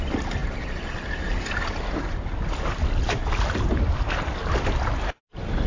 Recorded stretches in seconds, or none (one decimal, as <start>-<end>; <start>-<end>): 0.0-5.7